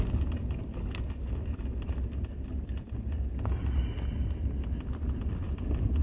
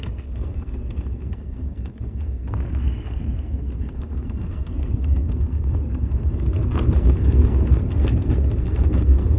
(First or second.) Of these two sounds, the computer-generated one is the second